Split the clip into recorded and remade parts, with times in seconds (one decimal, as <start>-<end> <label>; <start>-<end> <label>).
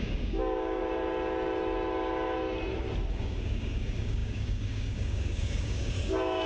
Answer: 0.0-0.8 remade; 0.8-3.1 recorded; 3.1-6.5 remade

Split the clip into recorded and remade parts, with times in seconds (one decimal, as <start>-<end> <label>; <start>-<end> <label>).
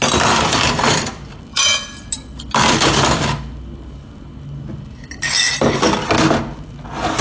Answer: 0.0-7.2 recorded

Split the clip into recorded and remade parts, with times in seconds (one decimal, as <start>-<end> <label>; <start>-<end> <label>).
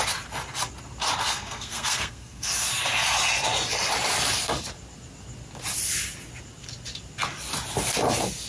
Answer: 0.0-1.2 recorded; 1.2-2.5 remade; 2.5-8.5 recorded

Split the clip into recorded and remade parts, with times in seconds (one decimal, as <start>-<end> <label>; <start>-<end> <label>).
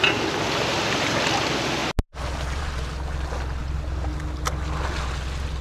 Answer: 0.0-5.6 recorded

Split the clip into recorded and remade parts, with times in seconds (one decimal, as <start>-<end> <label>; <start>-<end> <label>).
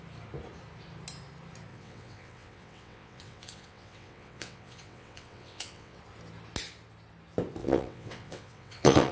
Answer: 0.0-1.7 recorded; 1.7-6.0 remade; 6.0-7.6 recorded; 7.6-9.1 remade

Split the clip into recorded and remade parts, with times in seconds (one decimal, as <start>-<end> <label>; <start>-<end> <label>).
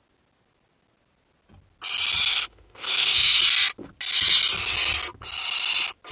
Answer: 0.0-2.3 recorded; 2.3-3.4 remade; 3.4-6.1 recorded